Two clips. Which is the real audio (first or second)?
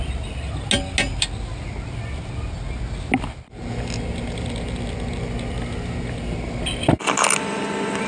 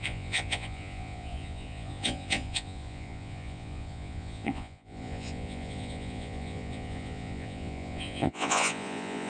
first